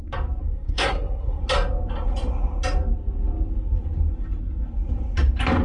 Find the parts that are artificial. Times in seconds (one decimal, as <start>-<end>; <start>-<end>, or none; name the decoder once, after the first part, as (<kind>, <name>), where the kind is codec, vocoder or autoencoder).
0.4-1.4 (codec, SNAC)

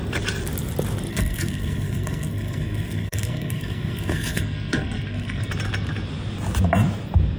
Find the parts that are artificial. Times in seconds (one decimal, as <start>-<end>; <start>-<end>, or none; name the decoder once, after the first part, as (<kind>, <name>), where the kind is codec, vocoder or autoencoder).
1.1-5.5 (codec, SNAC)

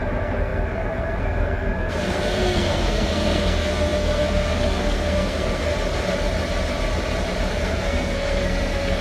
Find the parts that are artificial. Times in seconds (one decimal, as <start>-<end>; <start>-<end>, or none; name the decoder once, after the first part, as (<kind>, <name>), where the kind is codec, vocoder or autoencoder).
0.0-5.7 (codec, SNAC); 7.5-9.0

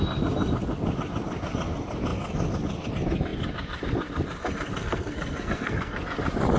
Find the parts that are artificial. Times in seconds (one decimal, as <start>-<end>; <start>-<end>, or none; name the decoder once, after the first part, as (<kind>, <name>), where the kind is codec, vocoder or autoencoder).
4.7-6.0 (codec, SNAC)